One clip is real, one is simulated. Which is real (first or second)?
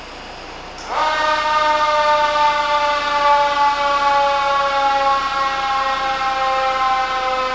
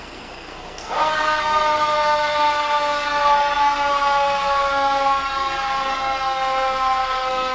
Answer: first